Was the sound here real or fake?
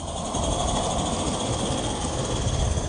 real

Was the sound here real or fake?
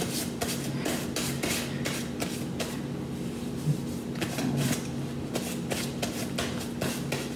real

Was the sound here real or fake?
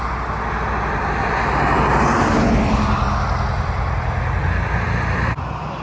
real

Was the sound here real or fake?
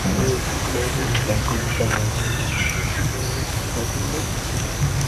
fake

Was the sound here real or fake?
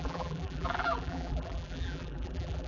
fake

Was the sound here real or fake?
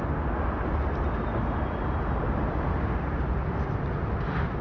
real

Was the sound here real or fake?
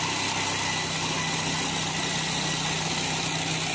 real